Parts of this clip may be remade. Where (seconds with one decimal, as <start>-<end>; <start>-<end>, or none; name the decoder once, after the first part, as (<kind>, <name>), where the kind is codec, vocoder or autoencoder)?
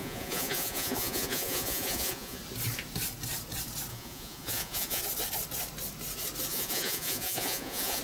0.0-2.4 (vocoder, Vocos); 3.9-5.0; 6.5-8.0